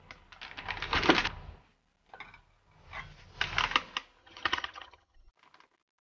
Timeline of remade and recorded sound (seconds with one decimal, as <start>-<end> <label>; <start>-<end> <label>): 0.0-4.2 recorded; 4.2-5.3 remade; 5.3-6.1 recorded